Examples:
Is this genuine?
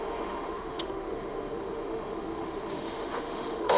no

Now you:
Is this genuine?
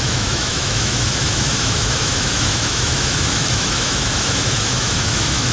no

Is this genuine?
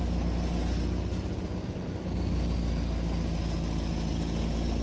yes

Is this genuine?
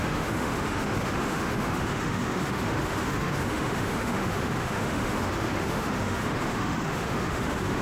no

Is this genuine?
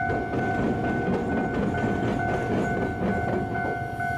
yes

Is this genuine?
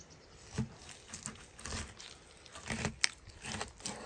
yes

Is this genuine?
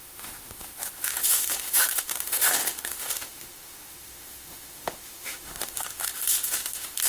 no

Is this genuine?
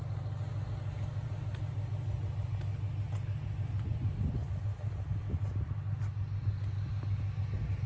yes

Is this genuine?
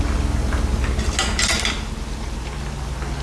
yes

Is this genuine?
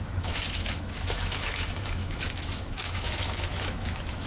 no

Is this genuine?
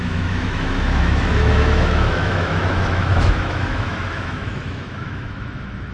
no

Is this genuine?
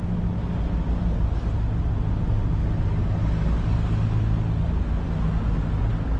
yes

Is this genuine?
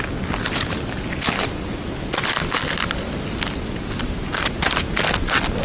yes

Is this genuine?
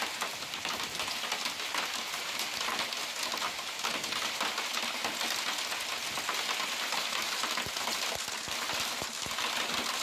yes